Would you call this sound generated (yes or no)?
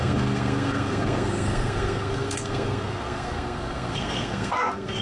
yes